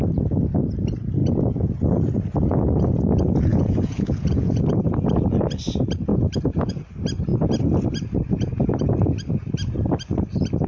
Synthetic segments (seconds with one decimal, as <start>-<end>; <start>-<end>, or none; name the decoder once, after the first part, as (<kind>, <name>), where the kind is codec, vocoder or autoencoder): 3.5-4.6 (vocoder, Vocos); 6.1-6.7